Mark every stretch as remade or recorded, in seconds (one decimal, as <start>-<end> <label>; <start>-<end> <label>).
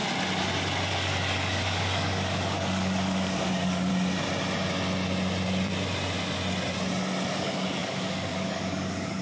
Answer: 0.0-0.9 recorded; 0.9-3.9 remade; 3.9-7.3 recorded; 7.3-9.2 remade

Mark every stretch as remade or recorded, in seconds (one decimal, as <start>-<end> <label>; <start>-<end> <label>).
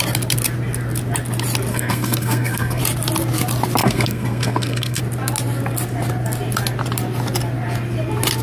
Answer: 0.0-1.7 recorded; 1.7-2.8 remade; 2.8-3.8 recorded; 3.8-5.0 remade; 5.0-8.4 recorded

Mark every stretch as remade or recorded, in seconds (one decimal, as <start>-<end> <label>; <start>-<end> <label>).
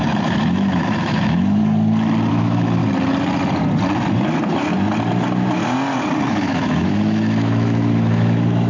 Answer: 0.0-1.6 remade; 1.6-2.3 recorded; 2.3-2.8 remade; 2.8-6.3 recorded; 6.3-8.7 remade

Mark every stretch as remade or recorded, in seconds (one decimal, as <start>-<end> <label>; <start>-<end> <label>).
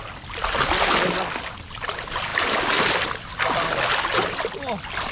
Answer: 0.0-5.1 recorded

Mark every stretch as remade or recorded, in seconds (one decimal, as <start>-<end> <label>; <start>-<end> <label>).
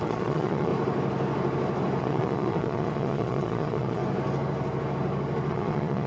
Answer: 0.0-0.7 remade; 0.7-2.0 recorded; 2.0-4.0 remade; 4.0-5.5 recorded; 5.5-6.1 remade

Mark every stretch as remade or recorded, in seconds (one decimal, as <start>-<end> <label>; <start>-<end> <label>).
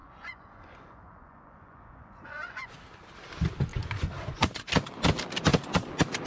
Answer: 0.0-2.8 remade; 2.8-3.7 recorded; 3.7-4.7 remade; 4.7-6.3 recorded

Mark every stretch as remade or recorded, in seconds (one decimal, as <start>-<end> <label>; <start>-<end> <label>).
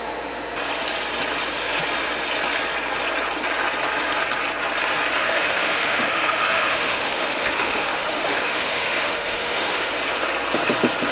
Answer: 0.0-5.2 recorded; 5.2-9.9 remade; 9.9-11.1 recorded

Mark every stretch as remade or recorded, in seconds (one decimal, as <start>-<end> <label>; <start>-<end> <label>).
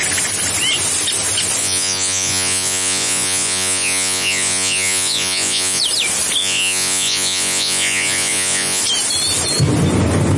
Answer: 0.0-1.6 recorded; 1.6-5.8 remade; 5.8-6.4 recorded; 6.4-8.8 remade; 8.8-10.4 recorded